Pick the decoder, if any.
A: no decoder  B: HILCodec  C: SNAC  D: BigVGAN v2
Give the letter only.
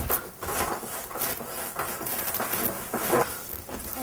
A